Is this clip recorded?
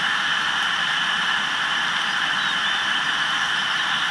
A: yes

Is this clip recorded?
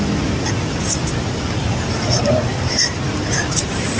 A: yes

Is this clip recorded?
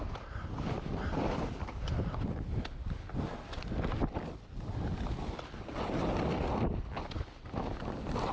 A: yes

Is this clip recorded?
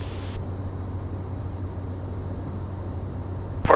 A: yes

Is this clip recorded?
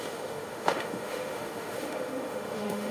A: no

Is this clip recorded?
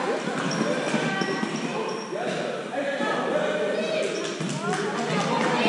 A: yes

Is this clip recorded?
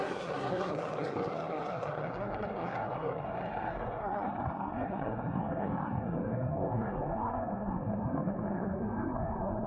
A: no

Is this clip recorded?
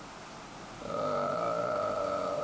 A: yes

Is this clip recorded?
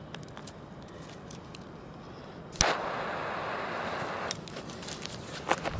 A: yes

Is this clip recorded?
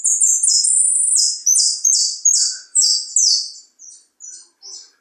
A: yes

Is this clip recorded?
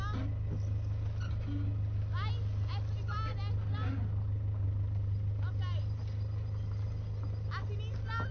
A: yes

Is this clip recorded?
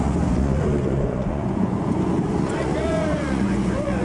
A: no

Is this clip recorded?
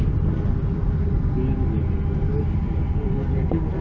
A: yes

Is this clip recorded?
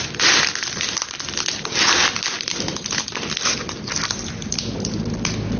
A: yes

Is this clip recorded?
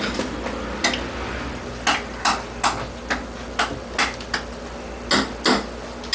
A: yes